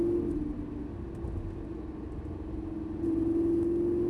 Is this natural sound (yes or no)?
yes